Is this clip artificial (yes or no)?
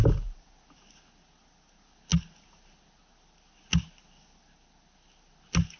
no